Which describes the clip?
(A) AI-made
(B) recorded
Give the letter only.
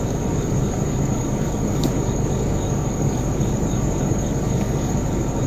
A